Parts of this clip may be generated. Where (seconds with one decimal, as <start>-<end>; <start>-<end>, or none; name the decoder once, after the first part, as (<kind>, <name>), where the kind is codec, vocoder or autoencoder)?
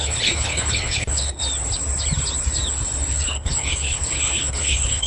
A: 0.0-1.4 (codec, HILCodec); 3.1-5.1